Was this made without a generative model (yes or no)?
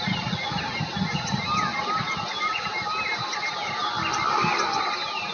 yes